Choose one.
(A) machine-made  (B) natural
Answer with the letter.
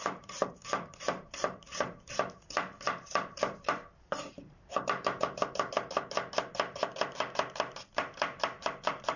A